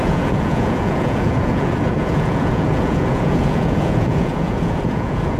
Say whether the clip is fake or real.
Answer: fake